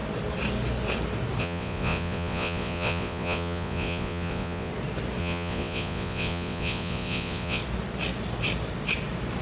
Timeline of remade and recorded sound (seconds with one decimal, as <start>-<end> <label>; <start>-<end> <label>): 0.0-1.4 recorded; 1.4-4.7 remade; 4.7-5.2 recorded; 5.2-7.6 remade; 7.6-9.4 recorded